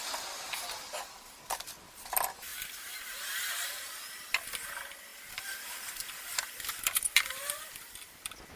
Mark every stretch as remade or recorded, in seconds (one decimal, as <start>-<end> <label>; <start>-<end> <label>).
0.0-8.6 recorded